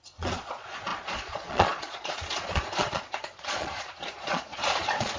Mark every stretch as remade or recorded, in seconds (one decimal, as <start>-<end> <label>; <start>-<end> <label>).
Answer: 0.0-5.2 remade